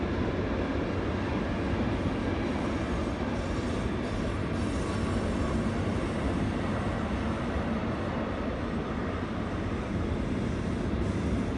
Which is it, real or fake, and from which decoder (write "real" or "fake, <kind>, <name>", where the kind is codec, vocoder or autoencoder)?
real